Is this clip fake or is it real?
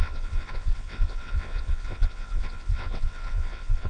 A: fake